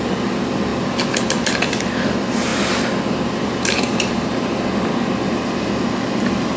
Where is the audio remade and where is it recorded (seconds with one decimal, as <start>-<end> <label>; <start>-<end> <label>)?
0.0-6.6 recorded

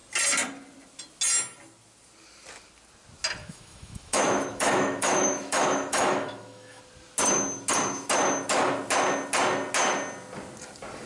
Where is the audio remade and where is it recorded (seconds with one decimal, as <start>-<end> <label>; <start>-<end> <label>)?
0.0-3.4 recorded; 3.4-6.8 remade; 6.8-11.1 recorded